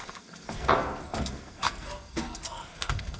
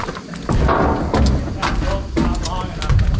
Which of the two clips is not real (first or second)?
first